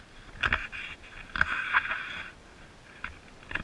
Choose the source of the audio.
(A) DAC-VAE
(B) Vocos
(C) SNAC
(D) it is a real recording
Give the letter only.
D